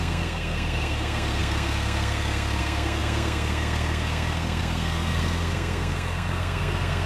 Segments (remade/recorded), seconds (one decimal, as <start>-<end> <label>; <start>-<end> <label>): 0.0-7.1 remade